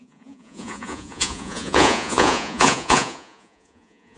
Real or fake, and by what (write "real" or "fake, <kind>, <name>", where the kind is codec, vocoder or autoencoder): fake, vocoder, Vocos